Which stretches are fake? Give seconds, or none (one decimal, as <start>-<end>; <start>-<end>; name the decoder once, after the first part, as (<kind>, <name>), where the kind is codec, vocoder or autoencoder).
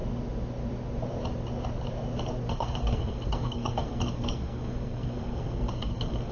2.5-6.3 (codec, SNAC)